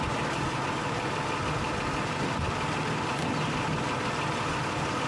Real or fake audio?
real